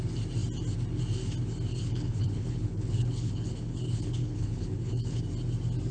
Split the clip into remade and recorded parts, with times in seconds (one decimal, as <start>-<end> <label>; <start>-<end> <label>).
0.0-1.7 recorded; 1.7-5.2 remade; 5.2-5.9 recorded